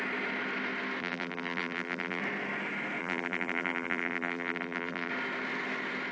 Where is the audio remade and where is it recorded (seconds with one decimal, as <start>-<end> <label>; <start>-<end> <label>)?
0.0-1.0 recorded; 1.0-2.2 remade; 2.2-3.0 recorded; 3.0-5.1 remade; 5.1-6.1 recorded